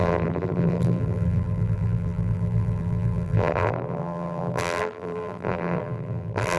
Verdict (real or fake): fake